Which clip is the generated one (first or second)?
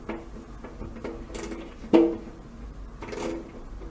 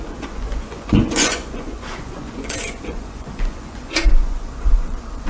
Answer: second